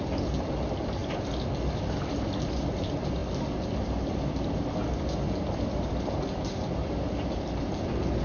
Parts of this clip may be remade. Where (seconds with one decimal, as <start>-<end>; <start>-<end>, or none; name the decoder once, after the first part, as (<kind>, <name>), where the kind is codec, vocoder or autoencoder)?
none